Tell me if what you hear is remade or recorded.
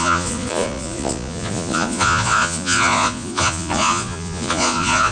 remade